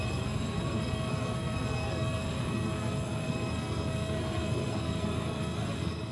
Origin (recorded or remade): remade